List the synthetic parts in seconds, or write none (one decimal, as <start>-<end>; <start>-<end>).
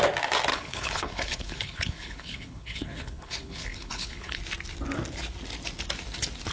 0.5-4.4